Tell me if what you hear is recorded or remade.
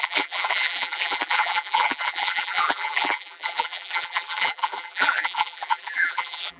remade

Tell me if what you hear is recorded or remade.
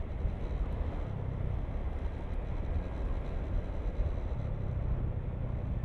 recorded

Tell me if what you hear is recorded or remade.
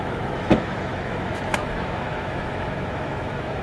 remade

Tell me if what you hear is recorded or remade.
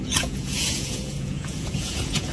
remade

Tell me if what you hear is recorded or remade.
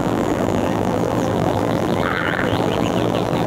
remade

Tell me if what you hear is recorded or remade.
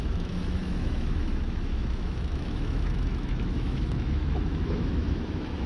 remade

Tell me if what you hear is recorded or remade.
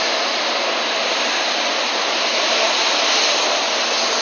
recorded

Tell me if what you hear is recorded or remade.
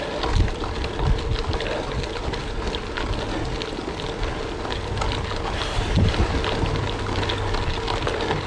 recorded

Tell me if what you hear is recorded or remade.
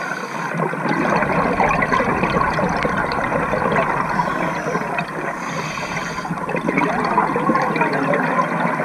recorded